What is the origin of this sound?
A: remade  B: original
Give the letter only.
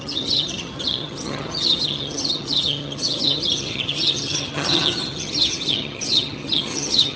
A